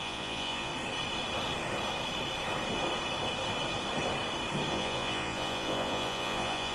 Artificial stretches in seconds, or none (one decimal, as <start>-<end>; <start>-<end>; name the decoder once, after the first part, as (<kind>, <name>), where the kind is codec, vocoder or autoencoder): 0.0-0.7 (vocoder, Vocos); 4.7-6.7